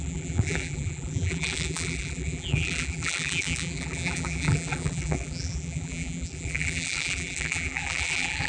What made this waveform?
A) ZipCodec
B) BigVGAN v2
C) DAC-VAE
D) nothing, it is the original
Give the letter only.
B